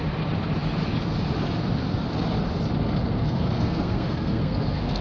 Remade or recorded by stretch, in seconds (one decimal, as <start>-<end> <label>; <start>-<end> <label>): 0.0-3.0 recorded; 3.0-5.0 remade